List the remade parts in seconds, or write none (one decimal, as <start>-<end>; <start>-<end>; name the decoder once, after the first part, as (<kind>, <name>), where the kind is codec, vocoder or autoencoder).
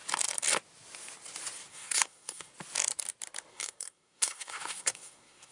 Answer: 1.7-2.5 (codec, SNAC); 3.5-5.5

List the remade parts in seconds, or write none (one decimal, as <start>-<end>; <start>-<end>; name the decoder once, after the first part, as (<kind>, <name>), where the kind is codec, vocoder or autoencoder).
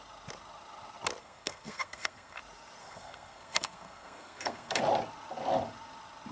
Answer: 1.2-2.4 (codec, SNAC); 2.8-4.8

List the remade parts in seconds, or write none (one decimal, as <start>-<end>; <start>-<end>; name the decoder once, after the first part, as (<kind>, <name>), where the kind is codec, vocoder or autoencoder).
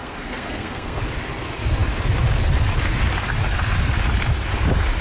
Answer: 0.0-1.0 (codec, SNAC)